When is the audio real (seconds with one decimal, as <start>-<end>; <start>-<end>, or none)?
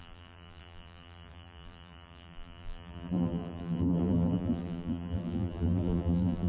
none